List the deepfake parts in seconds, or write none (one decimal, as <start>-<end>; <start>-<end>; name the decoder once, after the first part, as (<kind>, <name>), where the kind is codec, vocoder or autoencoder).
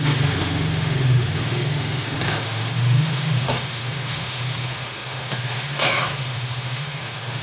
0.0-7.4 (autoencoder, DAC-VAE)